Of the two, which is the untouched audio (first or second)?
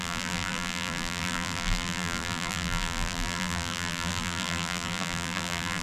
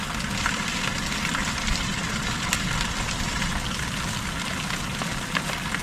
second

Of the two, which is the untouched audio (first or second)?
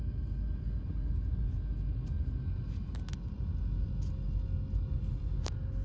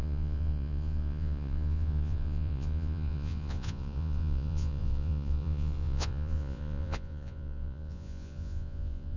first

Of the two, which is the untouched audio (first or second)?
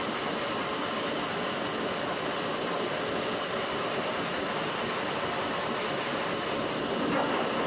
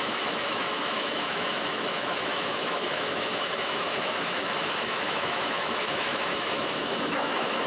first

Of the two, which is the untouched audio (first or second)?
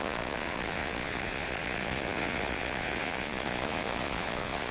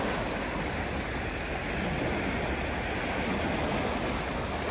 second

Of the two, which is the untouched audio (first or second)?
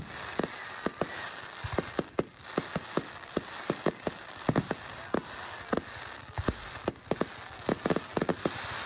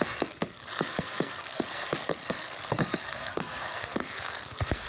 first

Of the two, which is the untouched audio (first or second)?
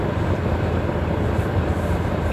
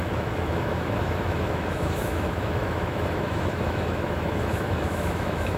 first